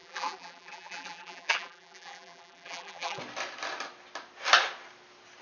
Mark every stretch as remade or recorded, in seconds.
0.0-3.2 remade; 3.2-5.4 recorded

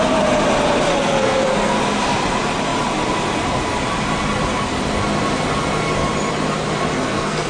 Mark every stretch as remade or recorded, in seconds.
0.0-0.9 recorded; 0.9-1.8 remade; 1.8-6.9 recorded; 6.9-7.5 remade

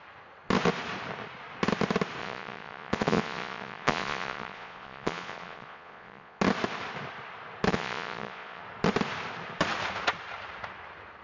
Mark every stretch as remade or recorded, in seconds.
0.0-2.2 recorded; 2.2-6.4 remade; 6.4-7.7 recorded; 7.7-8.6 remade; 8.6-11.2 recorded

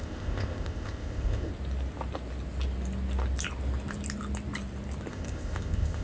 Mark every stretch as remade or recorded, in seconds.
0.0-1.5 remade; 1.5-5.1 recorded; 5.1-6.0 remade

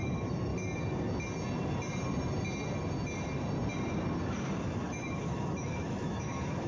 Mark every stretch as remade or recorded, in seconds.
0.0-0.5 remade; 0.5-4.5 recorded; 4.5-6.7 remade

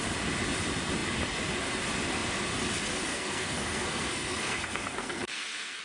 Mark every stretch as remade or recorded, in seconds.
0.0-3.1 recorded; 3.1-5.8 remade